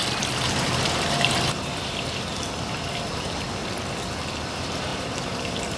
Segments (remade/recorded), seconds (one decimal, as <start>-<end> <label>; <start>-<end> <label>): 0.0-1.5 recorded; 1.5-3.6 remade; 3.6-4.1 recorded; 4.1-5.8 remade